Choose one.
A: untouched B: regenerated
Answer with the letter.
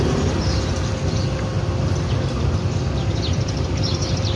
A